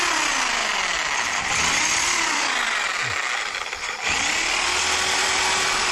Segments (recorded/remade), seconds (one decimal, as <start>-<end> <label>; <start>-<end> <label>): 0.0-5.9 recorded